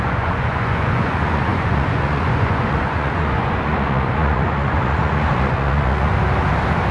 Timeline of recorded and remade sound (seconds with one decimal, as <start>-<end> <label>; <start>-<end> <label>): 0.0-6.1 remade; 6.1-6.9 recorded